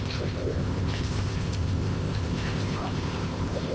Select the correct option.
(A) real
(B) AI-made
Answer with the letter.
B